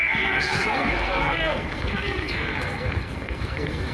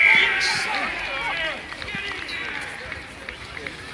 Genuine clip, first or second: second